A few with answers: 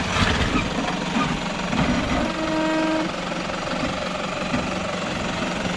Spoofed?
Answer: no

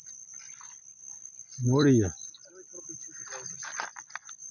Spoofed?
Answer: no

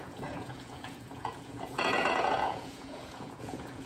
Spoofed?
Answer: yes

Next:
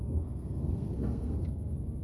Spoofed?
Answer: yes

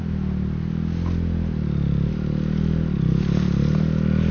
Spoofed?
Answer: no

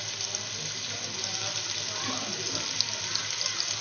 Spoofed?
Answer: no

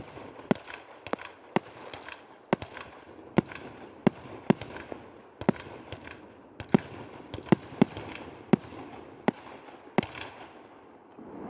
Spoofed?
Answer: no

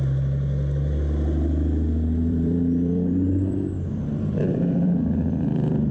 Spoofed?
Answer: yes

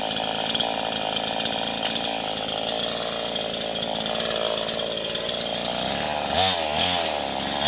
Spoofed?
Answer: no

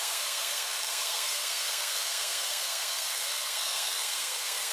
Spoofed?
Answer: yes